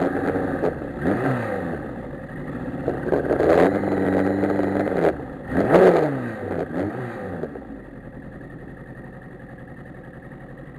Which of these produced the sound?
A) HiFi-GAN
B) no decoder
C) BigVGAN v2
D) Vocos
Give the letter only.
B